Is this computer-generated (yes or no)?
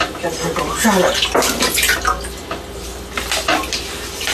no